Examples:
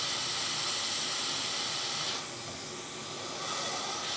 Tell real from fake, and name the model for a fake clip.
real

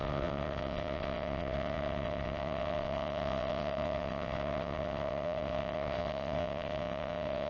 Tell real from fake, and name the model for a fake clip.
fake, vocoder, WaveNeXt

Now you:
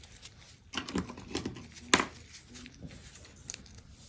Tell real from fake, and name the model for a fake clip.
real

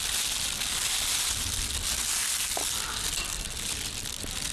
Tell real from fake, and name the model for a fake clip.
real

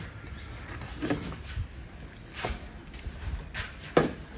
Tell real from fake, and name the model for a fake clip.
real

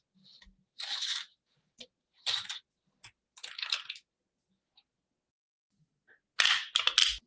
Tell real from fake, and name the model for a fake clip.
real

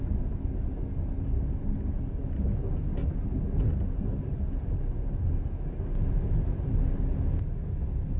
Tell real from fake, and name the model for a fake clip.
real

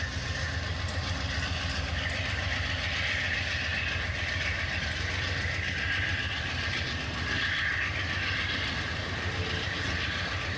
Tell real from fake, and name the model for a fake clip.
real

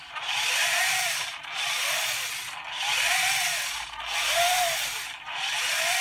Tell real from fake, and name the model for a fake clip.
real